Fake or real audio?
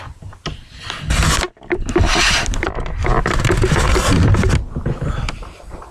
real